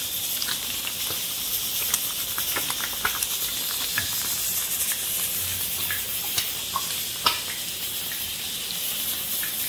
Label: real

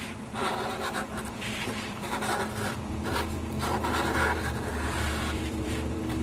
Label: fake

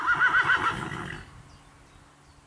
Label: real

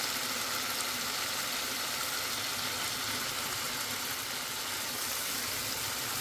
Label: real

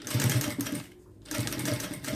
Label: real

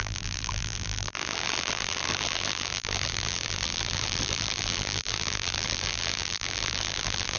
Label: fake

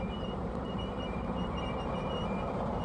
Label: fake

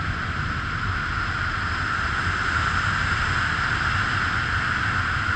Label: real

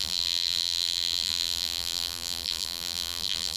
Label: fake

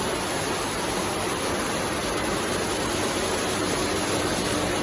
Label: real